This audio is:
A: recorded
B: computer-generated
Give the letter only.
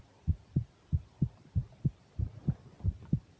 A